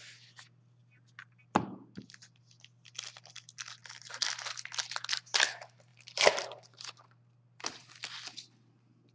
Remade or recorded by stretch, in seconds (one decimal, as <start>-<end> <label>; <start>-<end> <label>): 0.0-9.1 recorded